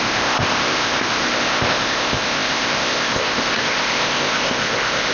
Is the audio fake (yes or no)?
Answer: yes